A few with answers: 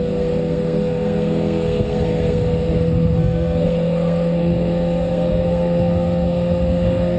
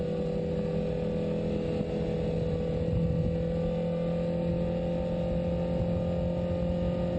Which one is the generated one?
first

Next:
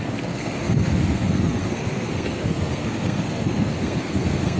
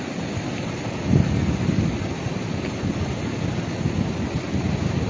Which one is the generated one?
first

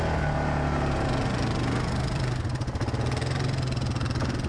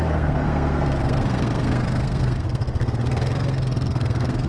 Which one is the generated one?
second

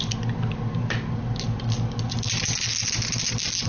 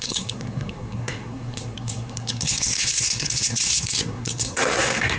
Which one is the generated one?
second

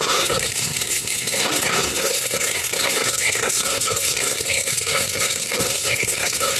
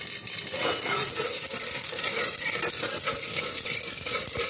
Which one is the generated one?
first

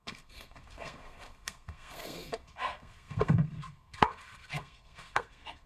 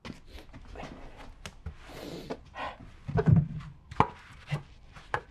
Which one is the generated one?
first